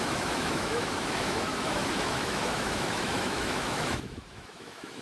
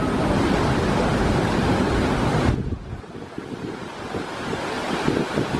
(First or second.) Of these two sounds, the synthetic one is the first